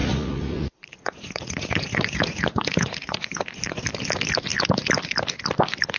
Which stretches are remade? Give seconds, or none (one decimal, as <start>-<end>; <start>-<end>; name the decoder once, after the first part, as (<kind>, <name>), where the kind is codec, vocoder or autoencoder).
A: 0.0-3.6 (vocoder, Vocos)